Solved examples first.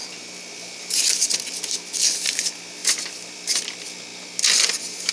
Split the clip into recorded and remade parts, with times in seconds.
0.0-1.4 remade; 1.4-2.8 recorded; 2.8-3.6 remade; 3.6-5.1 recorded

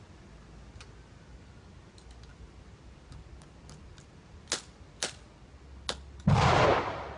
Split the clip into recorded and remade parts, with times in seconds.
0.0-7.2 recorded

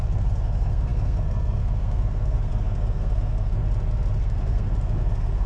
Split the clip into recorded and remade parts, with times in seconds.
0.0-3.6 remade; 3.6-4.2 recorded; 4.2-5.5 remade

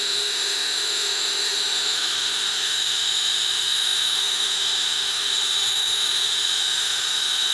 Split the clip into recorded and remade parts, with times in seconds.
0.0-7.5 remade

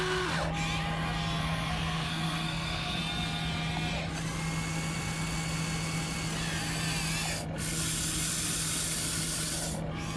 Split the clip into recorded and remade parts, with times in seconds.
0.0-1.4 recorded; 1.4-3.0 remade; 3.0-10.2 recorded

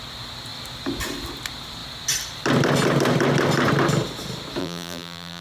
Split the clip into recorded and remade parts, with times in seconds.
0.0-4.6 recorded; 4.6-5.4 remade

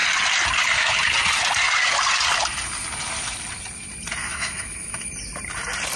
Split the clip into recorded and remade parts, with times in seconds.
0.0-4.2 recorded; 4.2-5.1 remade; 5.1-6.0 recorded

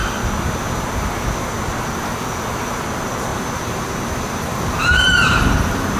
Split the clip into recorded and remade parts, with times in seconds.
0.0-3.3 recorded; 3.3-4.6 remade; 4.6-6.0 recorded